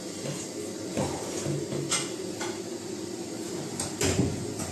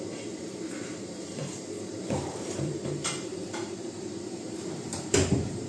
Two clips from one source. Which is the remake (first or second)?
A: second